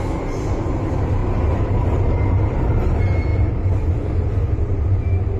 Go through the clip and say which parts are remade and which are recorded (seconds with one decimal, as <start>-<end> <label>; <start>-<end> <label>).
0.0-5.4 recorded